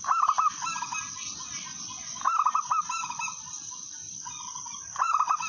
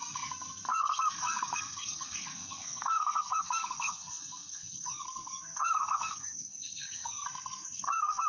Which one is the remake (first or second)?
second